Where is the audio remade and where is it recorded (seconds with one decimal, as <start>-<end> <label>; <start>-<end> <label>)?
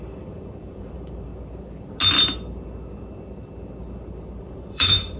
0.0-1.3 remade; 1.3-4.4 recorded; 4.4-5.2 remade